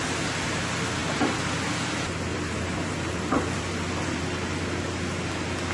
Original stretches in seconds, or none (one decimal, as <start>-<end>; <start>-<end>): 0.0-1.0; 1.7-2.3; 4.2-5.7